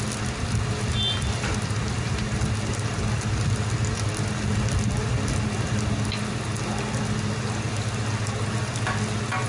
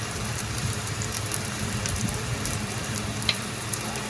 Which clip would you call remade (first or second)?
second